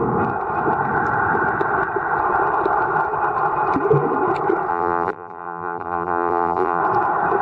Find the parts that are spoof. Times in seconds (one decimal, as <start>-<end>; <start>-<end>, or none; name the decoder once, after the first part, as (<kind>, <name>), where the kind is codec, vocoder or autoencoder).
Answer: 4.7-6.8 (vocoder, BigVGAN v2)